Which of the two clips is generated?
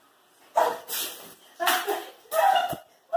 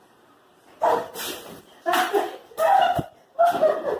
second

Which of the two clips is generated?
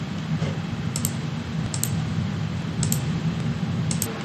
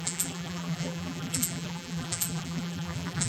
second